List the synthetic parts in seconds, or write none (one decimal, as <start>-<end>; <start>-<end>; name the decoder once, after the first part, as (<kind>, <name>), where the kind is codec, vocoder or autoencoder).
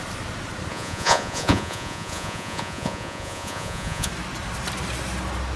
0.7-4.1 (vocoder, Vocos)